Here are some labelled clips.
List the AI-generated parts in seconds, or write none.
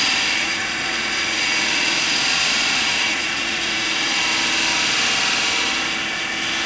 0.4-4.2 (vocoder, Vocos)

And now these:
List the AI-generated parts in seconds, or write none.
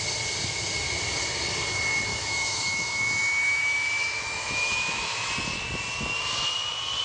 2.1-5.3 (autoencoder, DAC-VAE)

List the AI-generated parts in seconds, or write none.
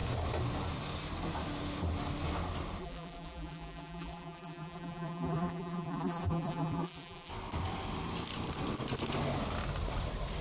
2.8-7.3 (vocoder, BigVGAN v2)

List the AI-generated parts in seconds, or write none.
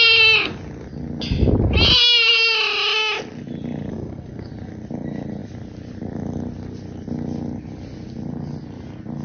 3.9-4.5 (codec, SNAC)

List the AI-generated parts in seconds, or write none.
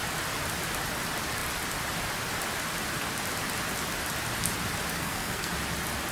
4.9-5.5 (codec, SNAC)